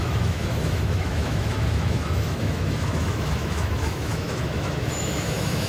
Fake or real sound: fake